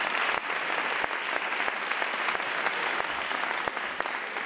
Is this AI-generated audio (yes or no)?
no